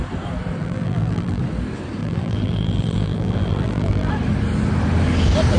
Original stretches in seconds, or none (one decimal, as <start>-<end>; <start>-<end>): 0.0-0.6; 1.4-2.0; 4.1-5.6